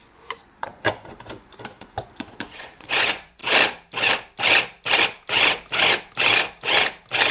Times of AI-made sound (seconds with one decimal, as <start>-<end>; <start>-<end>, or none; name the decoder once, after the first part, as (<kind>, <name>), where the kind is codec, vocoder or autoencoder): 0.0-3.4 (vocoder, Vocos)